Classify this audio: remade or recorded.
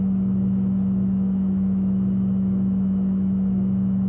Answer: remade